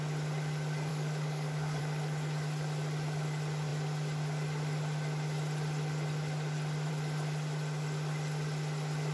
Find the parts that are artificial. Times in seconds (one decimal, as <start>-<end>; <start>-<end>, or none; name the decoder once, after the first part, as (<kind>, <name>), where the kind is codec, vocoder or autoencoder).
0.9-1.8 (codec, DAC)